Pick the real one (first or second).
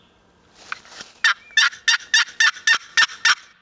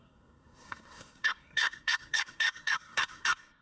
first